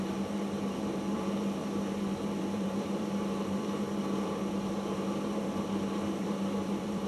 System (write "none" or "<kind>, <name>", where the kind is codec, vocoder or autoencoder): vocoder, BigVGAN v2